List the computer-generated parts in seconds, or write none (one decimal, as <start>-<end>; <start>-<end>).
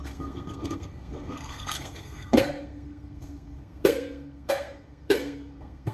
0.0-5.9